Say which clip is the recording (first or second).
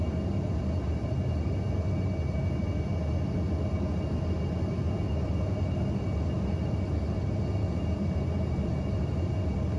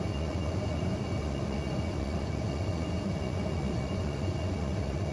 first